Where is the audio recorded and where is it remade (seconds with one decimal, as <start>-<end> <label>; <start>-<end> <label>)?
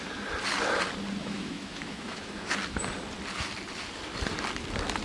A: 0.0-1.2 recorded; 1.2-2.5 remade; 2.5-5.0 recorded